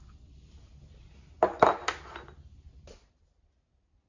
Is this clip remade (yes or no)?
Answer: no